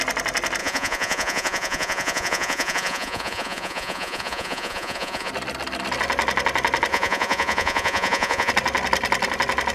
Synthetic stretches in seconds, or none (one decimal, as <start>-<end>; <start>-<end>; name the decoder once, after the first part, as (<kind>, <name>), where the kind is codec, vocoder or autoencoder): 0.6-5.3 (vocoder, Vocos); 6.9-8.5